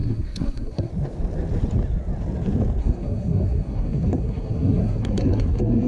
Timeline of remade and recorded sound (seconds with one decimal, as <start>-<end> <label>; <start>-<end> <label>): 0.0-0.9 remade; 0.9-2.8 recorded; 2.8-5.9 remade